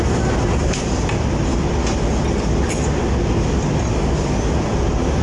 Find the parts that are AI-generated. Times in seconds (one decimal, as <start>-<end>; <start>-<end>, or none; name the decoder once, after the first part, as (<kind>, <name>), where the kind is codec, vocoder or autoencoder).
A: 0.0-1.5 (vocoder, BigVGAN v2); 4.6-5.2